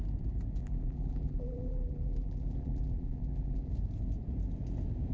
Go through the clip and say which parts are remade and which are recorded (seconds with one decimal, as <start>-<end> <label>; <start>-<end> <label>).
0.0-0.6 recorded; 0.6-3.7 remade; 3.7-5.1 recorded